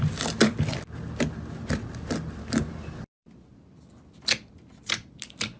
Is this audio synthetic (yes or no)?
yes